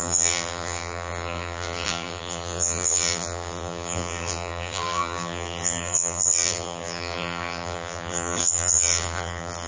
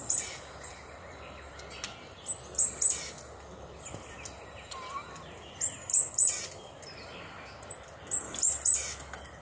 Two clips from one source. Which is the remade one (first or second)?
first